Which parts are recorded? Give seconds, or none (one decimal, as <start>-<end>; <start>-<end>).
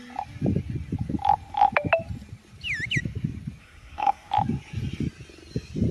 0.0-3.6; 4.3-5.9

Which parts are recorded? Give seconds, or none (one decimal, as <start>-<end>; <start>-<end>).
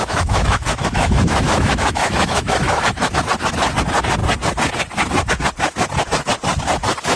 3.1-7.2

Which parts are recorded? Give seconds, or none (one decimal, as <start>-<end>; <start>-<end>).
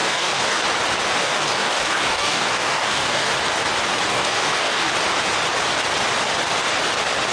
0.6-1.2; 3.3-4.1; 4.9-7.3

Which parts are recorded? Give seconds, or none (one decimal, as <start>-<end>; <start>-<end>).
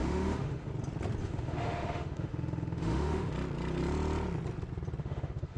0.7-1.2; 3.3-5.0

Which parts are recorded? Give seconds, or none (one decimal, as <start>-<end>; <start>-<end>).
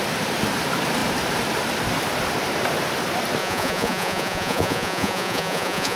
0.0-3.4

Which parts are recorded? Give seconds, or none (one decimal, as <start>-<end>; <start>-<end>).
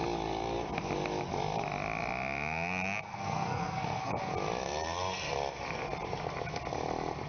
0.0-3.1; 4.2-7.3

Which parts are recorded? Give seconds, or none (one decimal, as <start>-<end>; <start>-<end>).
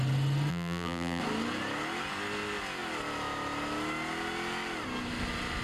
0.0-0.5; 1.2-5.6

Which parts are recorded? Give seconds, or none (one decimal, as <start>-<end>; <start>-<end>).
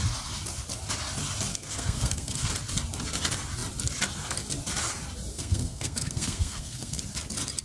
0.0-1.5; 2.5-5.3; 7.0-7.6